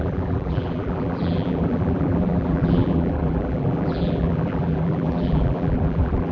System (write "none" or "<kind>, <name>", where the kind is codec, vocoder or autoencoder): vocoder, BigVGAN v2